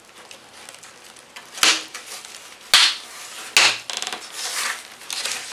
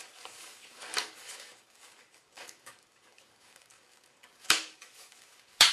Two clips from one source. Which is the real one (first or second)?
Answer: first